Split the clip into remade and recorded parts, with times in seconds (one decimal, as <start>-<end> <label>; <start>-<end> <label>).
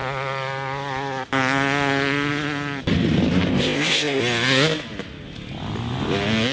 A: 0.0-3.5 recorded; 3.5-4.2 remade; 4.2-6.5 recorded